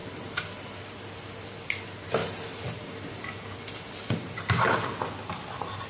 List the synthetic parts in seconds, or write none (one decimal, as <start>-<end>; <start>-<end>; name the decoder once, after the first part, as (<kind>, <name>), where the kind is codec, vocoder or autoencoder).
none